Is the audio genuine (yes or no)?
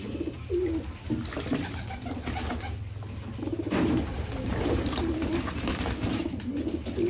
yes